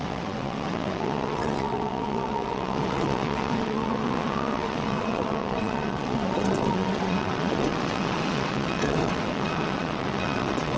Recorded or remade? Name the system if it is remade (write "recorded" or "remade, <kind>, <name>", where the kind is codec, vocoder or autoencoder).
remade, vocoder, WaveNeXt